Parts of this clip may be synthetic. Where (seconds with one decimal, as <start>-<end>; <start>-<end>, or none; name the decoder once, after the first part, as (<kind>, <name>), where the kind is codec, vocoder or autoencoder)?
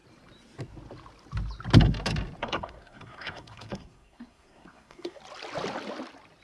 2.4-5.2 (codec, SNAC)